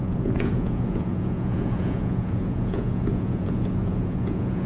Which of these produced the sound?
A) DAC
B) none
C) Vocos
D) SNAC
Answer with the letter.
C